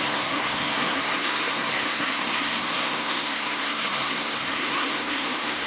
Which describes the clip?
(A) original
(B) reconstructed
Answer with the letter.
B